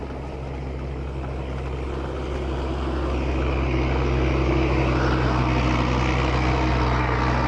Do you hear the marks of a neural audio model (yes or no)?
no